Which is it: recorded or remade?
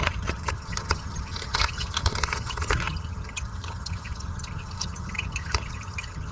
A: remade